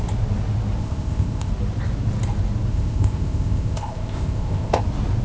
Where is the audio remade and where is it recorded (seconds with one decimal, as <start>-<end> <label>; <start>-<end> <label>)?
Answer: 0.0-0.8 recorded; 0.8-1.5 remade; 1.5-2.7 recorded; 2.7-4.8 remade; 4.8-5.2 recorded